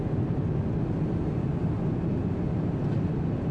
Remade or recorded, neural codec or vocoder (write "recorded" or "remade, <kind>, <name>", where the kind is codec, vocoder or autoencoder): recorded